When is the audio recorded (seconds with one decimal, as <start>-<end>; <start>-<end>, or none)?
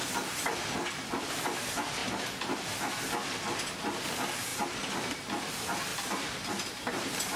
0.0-4.5; 5.3-5.9